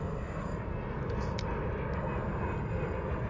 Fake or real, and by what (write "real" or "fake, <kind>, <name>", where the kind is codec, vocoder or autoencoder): real